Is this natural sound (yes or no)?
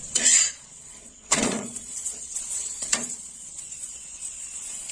no